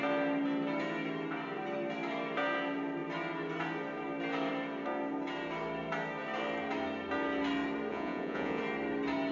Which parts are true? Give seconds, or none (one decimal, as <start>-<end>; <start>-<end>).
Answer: 0.0-7.9; 8.6-9.3